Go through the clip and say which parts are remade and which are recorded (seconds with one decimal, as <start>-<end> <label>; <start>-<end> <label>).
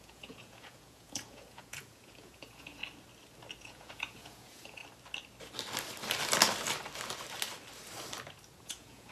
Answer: 0.0-2.8 remade; 2.8-3.6 recorded; 3.6-4.8 remade; 4.8-8.6 recorded; 8.6-9.1 remade